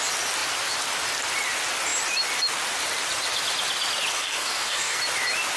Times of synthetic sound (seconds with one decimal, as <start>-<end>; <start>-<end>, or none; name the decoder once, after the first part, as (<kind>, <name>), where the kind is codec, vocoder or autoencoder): 4.1-5.0 (codec, SNAC)